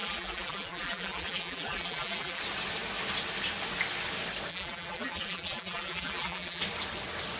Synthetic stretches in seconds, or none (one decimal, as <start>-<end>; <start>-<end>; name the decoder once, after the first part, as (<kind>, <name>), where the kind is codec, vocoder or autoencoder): 0.0-2.4 (vocoder, BigVGAN v2); 4.5-6.6